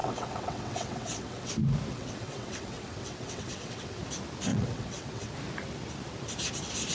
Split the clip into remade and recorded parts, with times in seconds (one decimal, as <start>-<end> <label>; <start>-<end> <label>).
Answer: 0.0-1.5 remade; 1.5-1.9 recorded; 1.9-4.0 remade; 4.0-4.5 recorded; 4.5-5.3 remade; 5.3-6.9 recorded

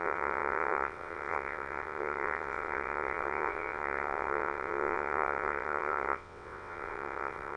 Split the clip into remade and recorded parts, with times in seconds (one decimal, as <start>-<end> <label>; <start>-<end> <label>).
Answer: 0.0-7.6 remade

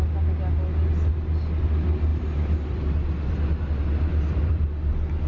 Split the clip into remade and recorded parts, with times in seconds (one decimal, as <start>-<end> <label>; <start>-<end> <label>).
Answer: 0.0-5.3 recorded